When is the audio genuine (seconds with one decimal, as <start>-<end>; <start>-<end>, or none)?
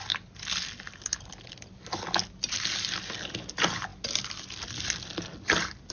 0.0-5.9